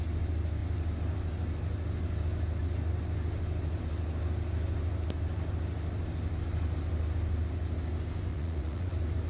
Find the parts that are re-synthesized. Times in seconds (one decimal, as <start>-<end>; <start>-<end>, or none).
8.3-8.9